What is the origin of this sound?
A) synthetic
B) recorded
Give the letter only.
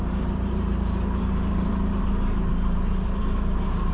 A